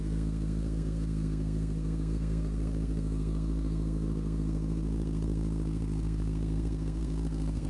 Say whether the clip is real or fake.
fake